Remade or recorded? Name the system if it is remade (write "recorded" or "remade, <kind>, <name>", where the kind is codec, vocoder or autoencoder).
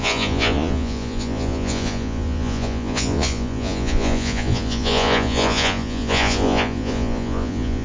remade, vocoder, Vocos